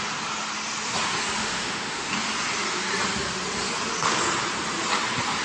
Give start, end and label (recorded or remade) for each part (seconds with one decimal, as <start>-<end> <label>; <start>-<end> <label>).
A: 0.0-1.4 recorded; 1.4-2.1 remade; 2.1-5.4 recorded